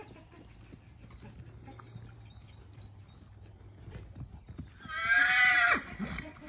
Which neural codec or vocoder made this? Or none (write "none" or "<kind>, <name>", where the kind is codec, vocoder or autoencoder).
none